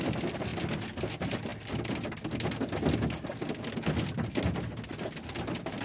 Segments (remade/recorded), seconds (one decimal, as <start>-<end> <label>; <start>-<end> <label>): 0.0-5.8 recorded